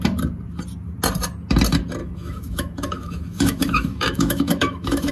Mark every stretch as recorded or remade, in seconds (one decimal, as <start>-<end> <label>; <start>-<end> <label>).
0.0-2.0 recorded; 2.0-5.1 remade